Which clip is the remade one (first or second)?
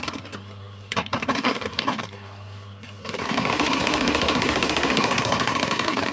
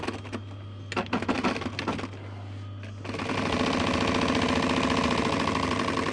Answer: first